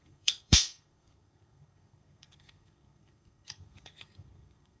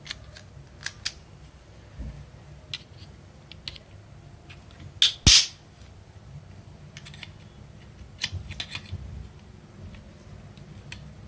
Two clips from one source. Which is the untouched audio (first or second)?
second